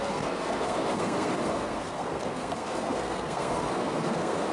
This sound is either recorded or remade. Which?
remade